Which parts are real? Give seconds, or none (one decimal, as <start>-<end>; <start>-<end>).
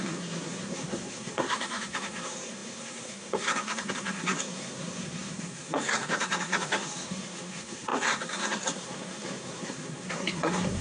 none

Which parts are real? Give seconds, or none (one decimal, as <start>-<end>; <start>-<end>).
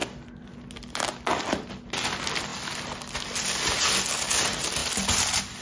0.0-5.6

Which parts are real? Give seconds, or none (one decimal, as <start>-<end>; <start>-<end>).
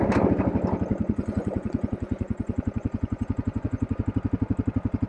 0.0-0.9; 4.0-5.1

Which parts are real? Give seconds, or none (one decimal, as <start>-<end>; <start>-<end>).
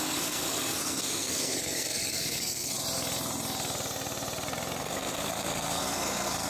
2.8-4.8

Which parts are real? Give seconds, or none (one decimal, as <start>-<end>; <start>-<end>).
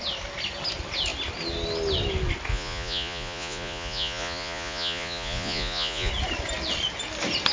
0.0-2.5; 6.1-7.5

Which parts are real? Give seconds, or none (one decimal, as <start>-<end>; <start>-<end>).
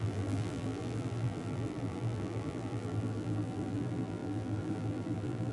none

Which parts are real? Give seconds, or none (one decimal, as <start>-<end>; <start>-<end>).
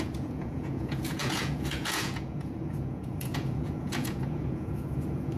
none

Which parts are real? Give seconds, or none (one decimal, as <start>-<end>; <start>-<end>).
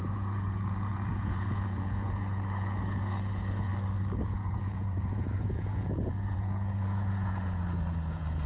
3.7-4.2